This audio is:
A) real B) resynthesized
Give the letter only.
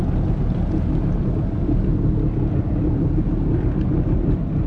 A